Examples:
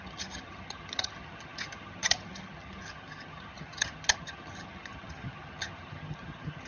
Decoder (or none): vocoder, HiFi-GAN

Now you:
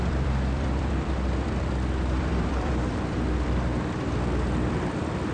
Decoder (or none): vocoder, BigVGAN v2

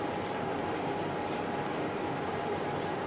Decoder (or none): none